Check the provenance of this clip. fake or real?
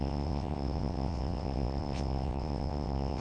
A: fake